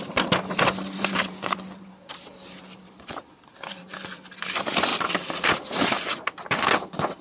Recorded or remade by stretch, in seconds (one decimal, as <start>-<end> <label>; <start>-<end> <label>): 0.0-4.9 remade; 4.9-7.2 recorded